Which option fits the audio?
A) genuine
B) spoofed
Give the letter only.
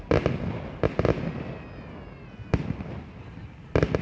A